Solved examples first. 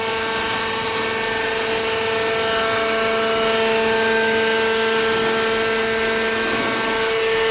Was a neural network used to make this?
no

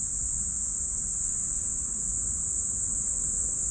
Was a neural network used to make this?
no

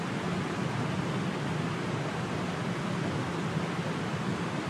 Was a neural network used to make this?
no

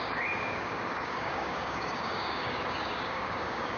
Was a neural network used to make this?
yes